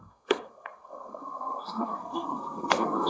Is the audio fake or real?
fake